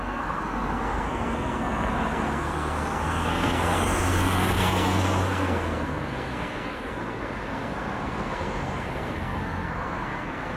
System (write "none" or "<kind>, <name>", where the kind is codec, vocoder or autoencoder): codec, SNAC